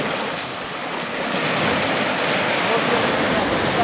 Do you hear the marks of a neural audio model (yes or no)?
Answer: no